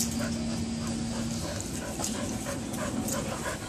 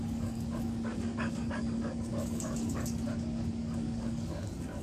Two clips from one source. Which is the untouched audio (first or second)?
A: first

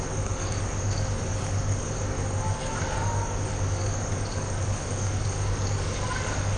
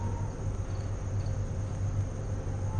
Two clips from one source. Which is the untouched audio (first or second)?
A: second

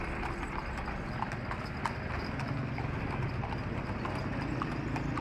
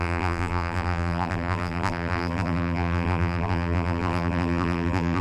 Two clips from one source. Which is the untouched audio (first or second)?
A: first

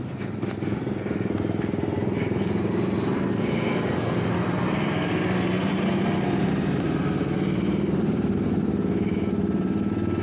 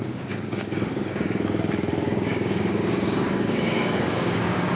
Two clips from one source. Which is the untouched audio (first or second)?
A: first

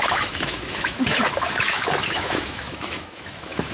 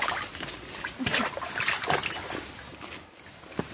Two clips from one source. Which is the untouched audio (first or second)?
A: second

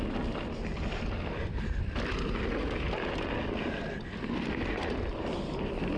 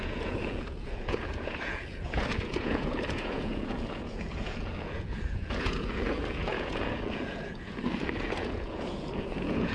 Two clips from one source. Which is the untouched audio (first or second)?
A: first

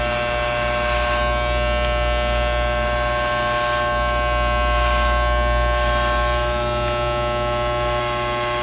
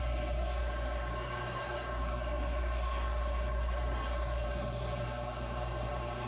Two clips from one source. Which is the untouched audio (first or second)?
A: first